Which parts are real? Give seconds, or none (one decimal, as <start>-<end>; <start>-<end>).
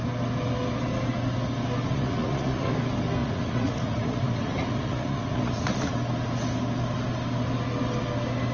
0.0-1.9; 2.7-3.2; 5.9-8.5